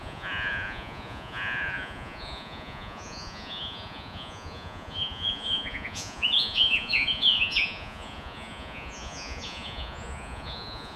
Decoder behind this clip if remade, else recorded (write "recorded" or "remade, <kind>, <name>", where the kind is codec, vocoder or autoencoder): remade, vocoder, Vocos